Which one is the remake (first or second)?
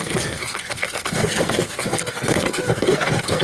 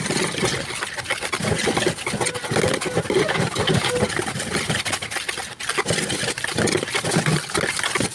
first